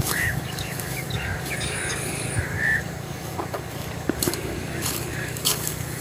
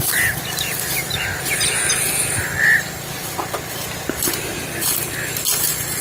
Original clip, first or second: second